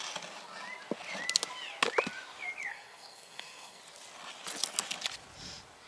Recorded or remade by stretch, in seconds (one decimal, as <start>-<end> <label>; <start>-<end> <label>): 0.0-2.7 recorded; 2.7-3.8 remade; 3.8-5.9 recorded